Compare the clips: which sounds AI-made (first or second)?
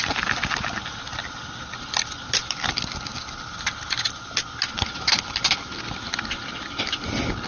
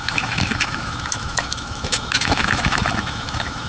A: second